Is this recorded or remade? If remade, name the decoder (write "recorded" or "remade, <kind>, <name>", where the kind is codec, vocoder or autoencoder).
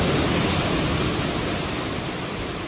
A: recorded